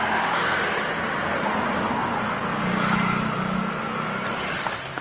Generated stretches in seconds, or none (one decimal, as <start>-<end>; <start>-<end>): none